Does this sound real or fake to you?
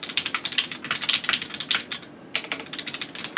real